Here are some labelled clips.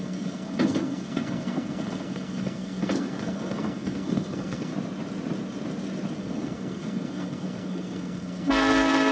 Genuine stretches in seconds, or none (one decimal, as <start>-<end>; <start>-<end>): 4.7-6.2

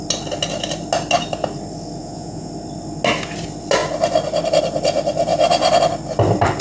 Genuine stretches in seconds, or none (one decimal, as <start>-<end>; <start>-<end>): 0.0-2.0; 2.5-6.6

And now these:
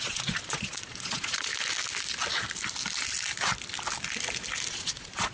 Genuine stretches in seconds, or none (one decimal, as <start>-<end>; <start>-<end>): 1.5-4.7

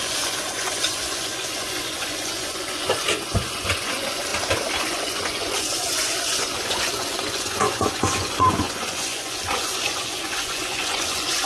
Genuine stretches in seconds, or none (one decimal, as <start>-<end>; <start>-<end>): 4.3-4.8

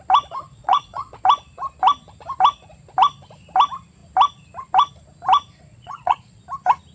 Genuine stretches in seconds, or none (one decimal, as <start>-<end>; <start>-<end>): 0.0-0.5; 1.2-5.7; 6.4-6.9